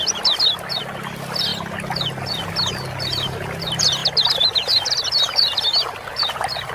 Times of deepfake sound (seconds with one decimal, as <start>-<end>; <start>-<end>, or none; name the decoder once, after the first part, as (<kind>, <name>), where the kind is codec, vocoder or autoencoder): 0.0-1.5 (vocoder, BigVGAN v2); 2.7-6.7